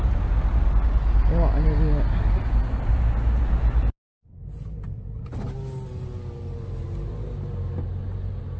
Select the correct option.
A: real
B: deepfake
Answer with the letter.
A